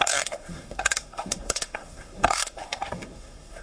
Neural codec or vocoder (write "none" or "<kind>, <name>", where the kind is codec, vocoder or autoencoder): codec, SNAC